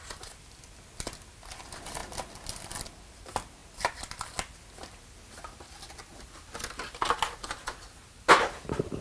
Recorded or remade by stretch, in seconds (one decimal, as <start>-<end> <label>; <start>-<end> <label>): 0.0-9.0 recorded